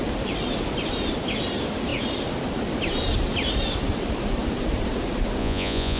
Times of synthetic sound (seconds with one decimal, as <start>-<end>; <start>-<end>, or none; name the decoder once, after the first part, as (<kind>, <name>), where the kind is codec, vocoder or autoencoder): 5.4-6.0 (vocoder, Vocos)